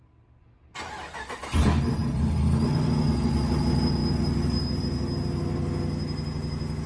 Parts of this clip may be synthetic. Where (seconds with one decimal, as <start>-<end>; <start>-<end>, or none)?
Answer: none